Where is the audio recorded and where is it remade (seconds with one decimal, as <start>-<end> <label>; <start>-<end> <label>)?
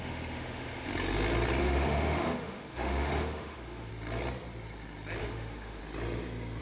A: 0.0-0.9 remade; 0.9-1.6 recorded; 1.6-3.9 remade; 3.9-5.2 recorded; 5.2-5.8 remade; 5.8-6.6 recorded